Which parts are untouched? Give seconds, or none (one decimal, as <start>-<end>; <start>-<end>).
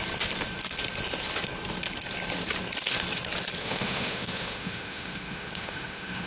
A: 0.0-3.6